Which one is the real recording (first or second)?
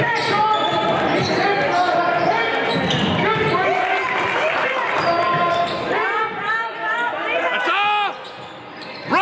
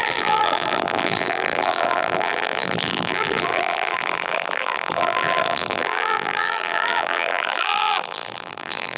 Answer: first